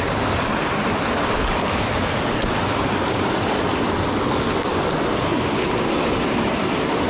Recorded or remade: recorded